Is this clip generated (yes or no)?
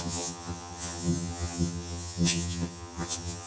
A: yes